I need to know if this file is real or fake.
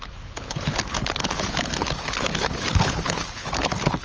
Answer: fake